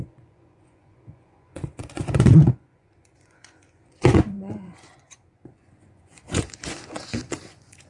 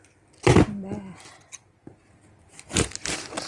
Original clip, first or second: second